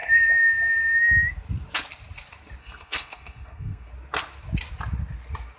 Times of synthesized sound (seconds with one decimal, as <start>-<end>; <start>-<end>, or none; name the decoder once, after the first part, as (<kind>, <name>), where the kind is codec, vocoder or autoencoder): 2.6-3.9 (codec, SNAC)